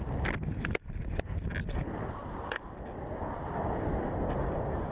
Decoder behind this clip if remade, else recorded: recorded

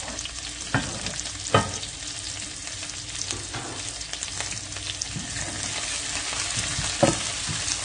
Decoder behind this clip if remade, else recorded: recorded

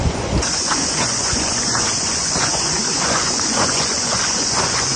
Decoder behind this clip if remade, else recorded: remade, vocoder, Vocos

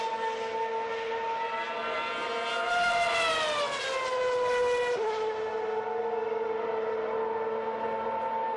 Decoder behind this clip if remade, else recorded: recorded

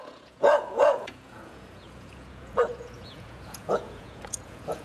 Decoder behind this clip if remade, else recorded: remade, vocoder, Vocos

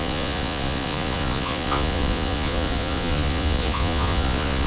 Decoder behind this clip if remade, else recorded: remade, vocoder, Vocos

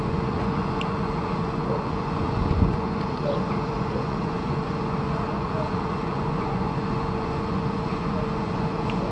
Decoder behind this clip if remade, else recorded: remade, vocoder, Vocos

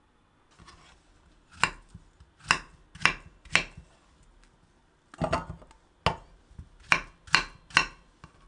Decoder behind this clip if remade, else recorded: recorded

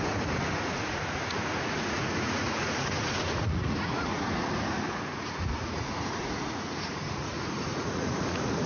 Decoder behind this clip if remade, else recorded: remade, vocoder, Vocos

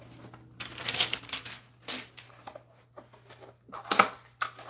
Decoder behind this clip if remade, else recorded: recorded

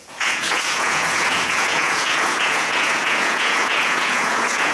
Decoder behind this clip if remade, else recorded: remade, vocoder, Vocos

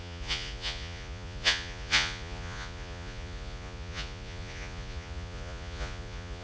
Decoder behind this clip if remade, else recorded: remade, vocoder, Vocos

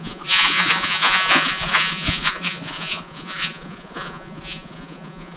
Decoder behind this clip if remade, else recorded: remade, vocoder, Vocos